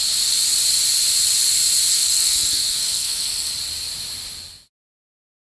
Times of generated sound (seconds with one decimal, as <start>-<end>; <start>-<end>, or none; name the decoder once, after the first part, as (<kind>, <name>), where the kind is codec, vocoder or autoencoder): 1.9-3.5 (codec, SNAC)